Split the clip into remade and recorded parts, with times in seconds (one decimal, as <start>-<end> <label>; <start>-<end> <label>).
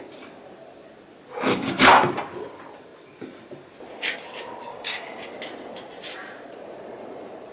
0.0-1.5 recorded; 1.5-2.1 remade; 2.1-4.7 recorded; 4.7-5.3 remade; 5.3-7.5 recorded